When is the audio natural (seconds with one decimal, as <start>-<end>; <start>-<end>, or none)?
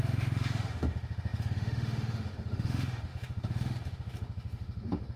none